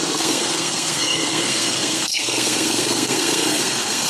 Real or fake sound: fake